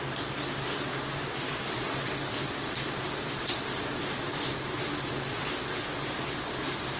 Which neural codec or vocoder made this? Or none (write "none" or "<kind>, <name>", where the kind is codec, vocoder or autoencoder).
none